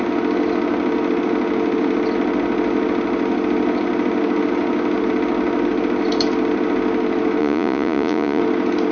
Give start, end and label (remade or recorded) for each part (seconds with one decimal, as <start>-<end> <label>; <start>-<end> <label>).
0.0-7.4 recorded; 7.4-8.4 remade; 8.4-8.9 recorded